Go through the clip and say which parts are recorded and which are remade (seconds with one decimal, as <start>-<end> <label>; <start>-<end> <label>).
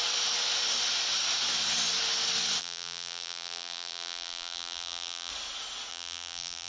0.0-2.6 recorded; 2.6-5.3 remade; 5.3-5.9 recorded; 5.9-6.7 remade